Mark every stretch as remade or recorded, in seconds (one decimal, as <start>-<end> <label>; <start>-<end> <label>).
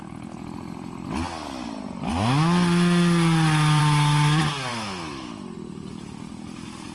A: 0.0-4.7 recorded; 4.7-5.3 remade; 5.3-6.9 recorded